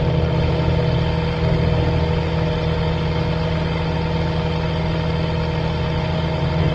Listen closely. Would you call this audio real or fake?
real